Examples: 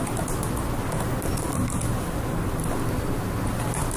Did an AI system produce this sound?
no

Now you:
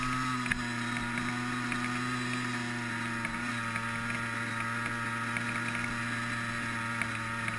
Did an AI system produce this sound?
no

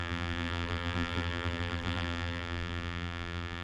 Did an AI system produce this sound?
yes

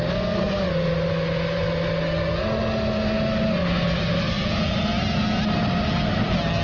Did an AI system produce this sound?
no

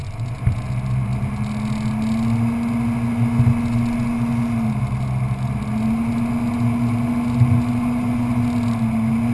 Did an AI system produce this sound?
no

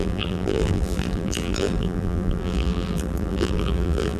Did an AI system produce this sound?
yes